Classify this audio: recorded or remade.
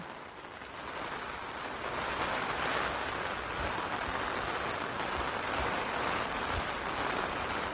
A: recorded